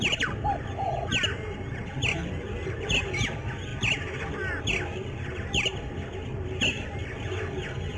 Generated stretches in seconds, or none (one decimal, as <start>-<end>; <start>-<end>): none